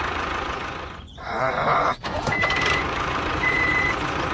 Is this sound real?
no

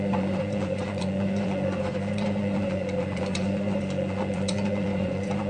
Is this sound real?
no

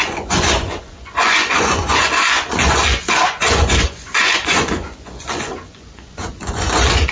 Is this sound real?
no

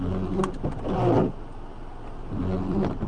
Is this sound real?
yes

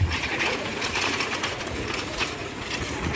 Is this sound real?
no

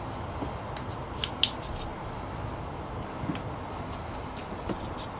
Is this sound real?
yes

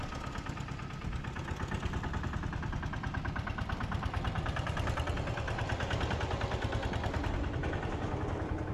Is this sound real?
yes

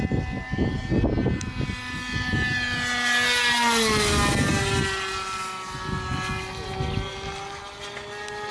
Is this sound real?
yes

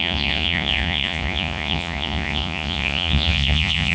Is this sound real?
no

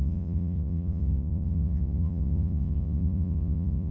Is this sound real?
no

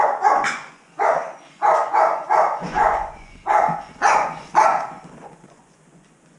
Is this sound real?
no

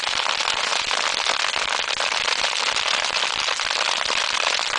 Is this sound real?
yes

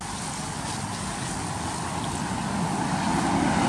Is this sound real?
yes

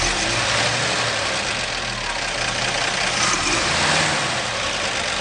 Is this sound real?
yes